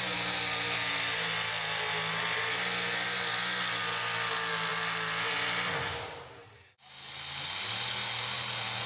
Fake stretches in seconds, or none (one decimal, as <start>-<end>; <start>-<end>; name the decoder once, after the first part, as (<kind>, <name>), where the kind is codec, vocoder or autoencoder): none